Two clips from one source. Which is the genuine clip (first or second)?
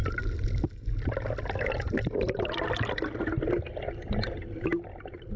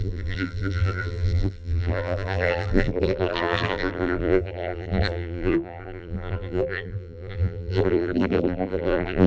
first